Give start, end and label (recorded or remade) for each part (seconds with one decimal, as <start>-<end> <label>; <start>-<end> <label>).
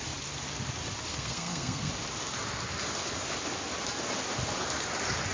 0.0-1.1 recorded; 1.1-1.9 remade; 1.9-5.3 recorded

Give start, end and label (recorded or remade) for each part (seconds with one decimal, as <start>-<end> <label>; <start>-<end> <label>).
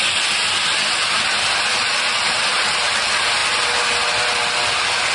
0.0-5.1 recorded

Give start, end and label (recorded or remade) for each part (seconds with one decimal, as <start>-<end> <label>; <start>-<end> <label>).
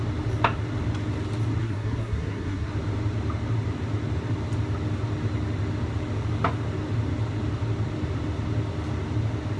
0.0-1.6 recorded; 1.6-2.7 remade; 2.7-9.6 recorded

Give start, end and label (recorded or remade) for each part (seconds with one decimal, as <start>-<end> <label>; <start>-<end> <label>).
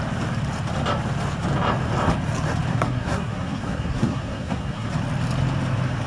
0.0-2.7 recorded; 2.7-4.9 remade; 4.9-6.1 recorded